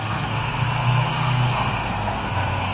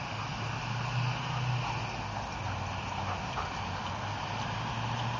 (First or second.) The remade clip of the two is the first